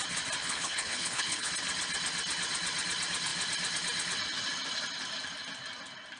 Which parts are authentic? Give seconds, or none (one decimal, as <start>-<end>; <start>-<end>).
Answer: 0.0-0.4; 1.5-6.2